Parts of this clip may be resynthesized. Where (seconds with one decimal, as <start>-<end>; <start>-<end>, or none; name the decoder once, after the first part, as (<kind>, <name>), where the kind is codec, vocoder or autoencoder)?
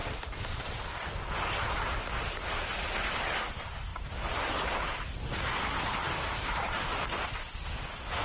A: 0.0-3.9 (vocoder, BigVGAN v2); 5.5-6.9; 7.7-8.2